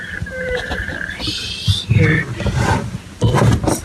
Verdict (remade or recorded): recorded